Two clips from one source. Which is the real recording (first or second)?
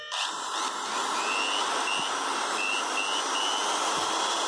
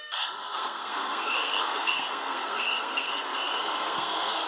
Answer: first